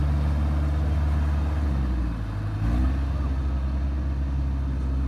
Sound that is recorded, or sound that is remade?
recorded